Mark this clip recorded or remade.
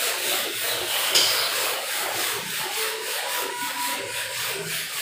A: remade